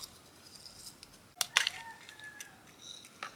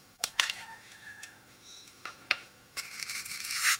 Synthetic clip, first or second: second